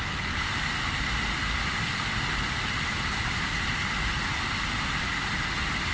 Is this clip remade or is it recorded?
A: recorded